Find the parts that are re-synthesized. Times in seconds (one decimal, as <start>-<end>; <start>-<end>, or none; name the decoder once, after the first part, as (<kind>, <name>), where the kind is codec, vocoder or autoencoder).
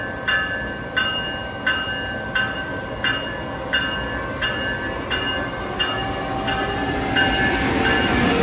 none